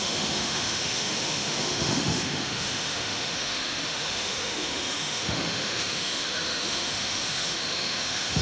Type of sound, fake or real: fake